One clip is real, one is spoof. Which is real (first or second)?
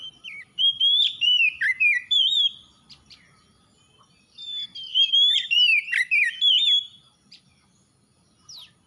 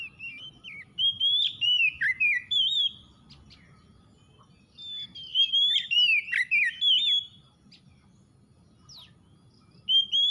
second